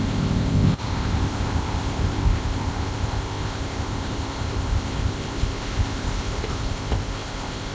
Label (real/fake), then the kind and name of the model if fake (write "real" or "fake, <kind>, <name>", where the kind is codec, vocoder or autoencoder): fake, codec, ZipCodec